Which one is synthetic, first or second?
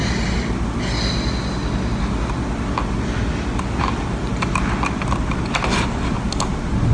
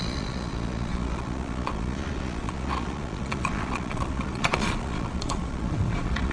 second